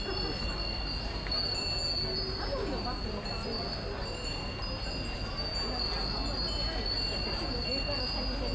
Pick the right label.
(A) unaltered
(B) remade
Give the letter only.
A